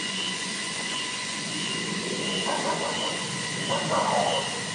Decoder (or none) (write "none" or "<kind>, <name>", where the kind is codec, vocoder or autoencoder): vocoder, Vocos